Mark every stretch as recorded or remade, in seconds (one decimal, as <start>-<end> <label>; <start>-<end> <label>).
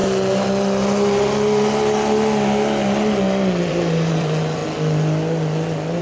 0.0-3.6 recorded; 3.6-4.6 remade; 4.6-6.0 recorded